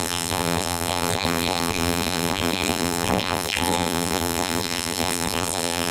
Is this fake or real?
fake